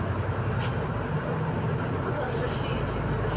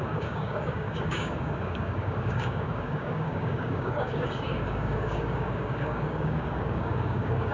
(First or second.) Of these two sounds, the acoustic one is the first